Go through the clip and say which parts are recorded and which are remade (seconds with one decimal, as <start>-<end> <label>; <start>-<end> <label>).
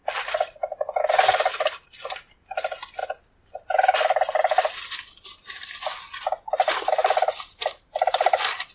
0.0-7.0 recorded; 7.0-8.7 remade